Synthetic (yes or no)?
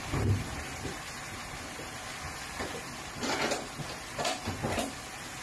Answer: no